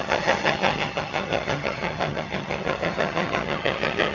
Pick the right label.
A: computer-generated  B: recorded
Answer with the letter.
A